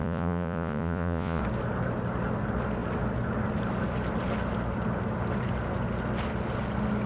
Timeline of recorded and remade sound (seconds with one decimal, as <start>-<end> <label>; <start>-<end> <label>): 0.0-1.4 remade; 1.4-7.1 recorded